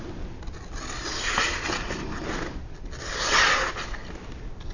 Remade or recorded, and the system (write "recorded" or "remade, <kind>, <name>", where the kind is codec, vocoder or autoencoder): recorded